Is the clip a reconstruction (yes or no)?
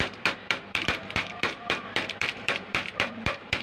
yes